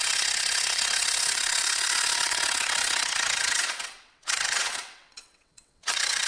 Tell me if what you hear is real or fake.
fake